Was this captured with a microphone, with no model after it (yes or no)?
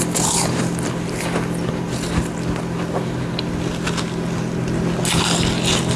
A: yes